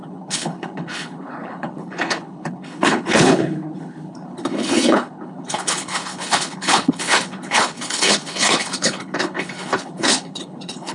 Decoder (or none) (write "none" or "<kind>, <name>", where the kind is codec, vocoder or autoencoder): codec, HILCodec